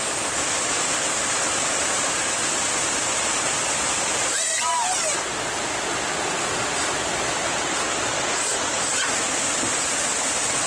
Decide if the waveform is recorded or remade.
recorded